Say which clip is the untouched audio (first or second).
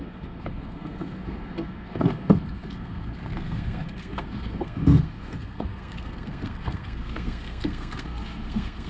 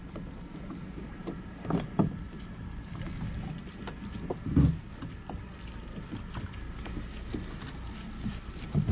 second